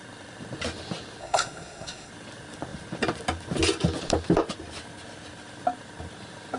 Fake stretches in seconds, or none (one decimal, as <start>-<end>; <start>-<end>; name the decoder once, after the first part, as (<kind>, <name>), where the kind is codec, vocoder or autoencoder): 1.2-2.1 (codec, SNAC)